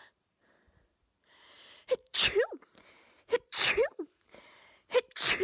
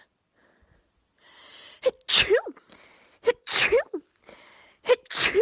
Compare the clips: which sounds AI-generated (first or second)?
first